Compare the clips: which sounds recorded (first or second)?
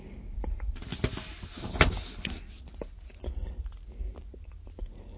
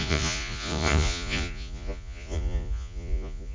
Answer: first